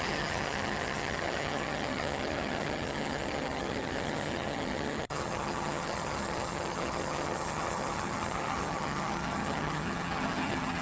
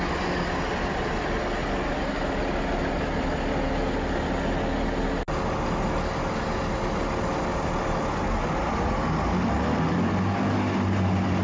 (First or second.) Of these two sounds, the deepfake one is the first